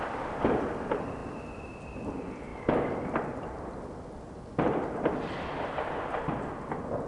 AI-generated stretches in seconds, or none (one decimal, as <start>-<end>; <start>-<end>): none